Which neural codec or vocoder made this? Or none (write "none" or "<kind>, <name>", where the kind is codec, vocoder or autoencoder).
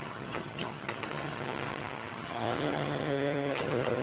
vocoder, HiFi-GAN